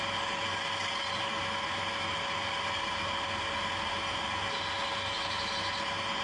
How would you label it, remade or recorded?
recorded